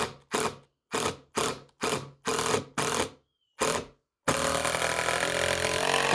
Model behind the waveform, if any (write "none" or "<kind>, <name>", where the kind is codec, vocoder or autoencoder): none